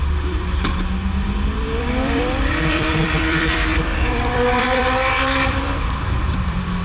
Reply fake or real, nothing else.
fake